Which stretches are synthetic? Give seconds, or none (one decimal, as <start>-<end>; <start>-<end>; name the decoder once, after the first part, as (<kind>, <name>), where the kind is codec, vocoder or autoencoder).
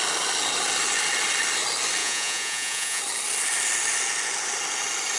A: 2.0-3.0 (vocoder, Vocos)